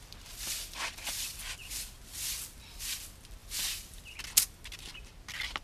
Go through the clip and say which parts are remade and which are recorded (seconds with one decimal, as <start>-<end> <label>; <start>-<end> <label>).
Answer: 0.0-5.6 recorded